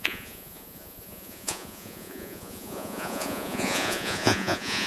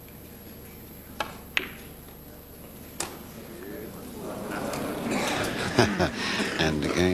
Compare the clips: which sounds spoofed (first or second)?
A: first